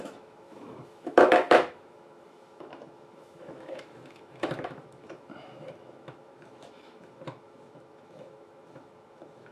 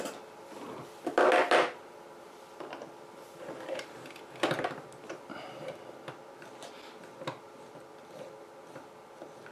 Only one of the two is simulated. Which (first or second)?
first